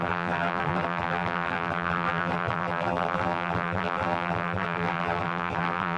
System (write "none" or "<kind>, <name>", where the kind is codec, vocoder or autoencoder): vocoder, BigVGAN v2